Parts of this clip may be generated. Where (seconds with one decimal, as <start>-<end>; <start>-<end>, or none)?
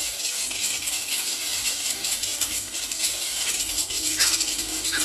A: 0.0-5.0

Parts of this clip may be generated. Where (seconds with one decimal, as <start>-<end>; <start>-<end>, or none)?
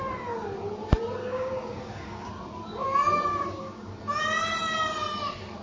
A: 1.2-2.3; 3.3-4.0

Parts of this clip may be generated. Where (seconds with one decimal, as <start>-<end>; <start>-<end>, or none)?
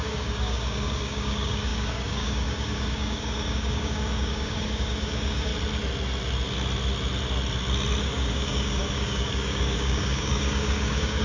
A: 0.0-5.5; 8.0-11.2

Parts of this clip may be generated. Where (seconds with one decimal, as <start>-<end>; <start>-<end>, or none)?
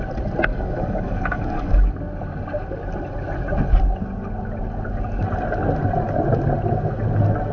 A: 0.5-1.9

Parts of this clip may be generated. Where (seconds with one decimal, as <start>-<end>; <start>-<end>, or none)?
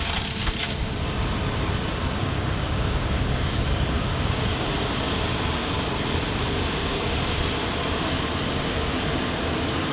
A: 2.2-4.9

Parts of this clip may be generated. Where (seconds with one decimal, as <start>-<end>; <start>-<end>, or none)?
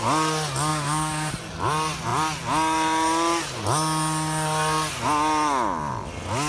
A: 0.7-1.3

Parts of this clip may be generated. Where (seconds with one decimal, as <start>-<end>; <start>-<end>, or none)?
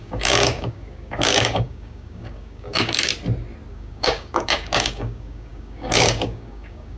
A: 0.0-3.1; 3.7-7.0